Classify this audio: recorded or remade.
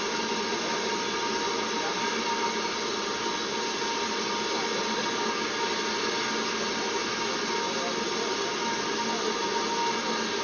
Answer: recorded